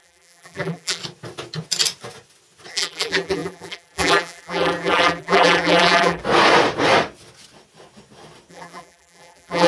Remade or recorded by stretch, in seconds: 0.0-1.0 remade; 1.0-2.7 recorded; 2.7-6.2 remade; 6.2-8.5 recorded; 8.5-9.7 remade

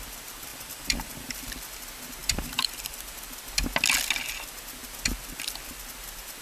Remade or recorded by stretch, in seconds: 0.0-0.5 recorded; 0.5-1.4 remade; 1.4-2.2 recorded; 2.2-3.0 remade; 3.0-6.4 recorded

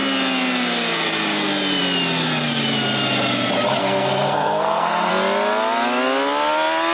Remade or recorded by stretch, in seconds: 0.0-3.8 recorded; 3.8-5.1 remade; 5.1-6.9 recorded

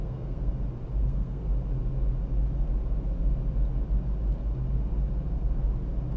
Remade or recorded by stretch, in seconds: 0.0-0.6 remade; 0.6-1.0 recorded; 1.0-1.5 remade; 1.5-6.2 recorded

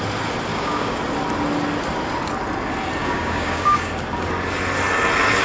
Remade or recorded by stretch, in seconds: 0.0-0.5 recorded; 0.5-1.0 remade; 1.0-3.0 recorded; 3.0-3.9 remade; 3.9-5.4 recorded

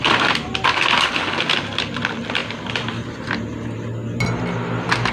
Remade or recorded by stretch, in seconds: 0.0-5.1 recorded

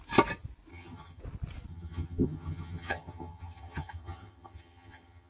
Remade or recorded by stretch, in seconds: 0.0-0.7 recorded; 0.7-1.2 remade; 1.2-1.7 recorded; 1.7-5.3 remade